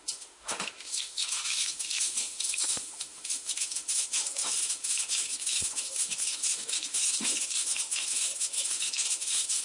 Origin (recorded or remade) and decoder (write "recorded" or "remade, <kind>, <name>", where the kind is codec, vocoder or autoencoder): remade, autoencoder, DAC-VAE